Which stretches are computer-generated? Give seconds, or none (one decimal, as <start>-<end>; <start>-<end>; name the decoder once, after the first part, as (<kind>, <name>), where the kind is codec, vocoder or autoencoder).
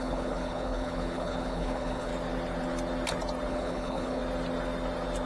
0.0-2.1 (codec, HILCodec); 3.5-4.2